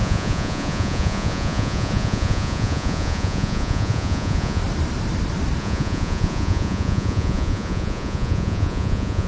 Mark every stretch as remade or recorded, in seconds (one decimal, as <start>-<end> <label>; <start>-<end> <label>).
0.0-4.6 remade; 4.6-5.6 recorded; 5.6-9.3 remade